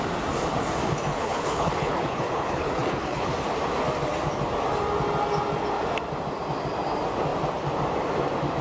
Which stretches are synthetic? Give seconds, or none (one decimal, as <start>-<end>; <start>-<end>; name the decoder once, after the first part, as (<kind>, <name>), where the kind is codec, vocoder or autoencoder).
1.1-3.3 (codec, HILCodec)